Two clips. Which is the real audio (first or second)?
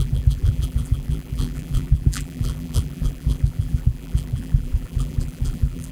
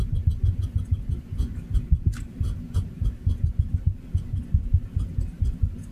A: second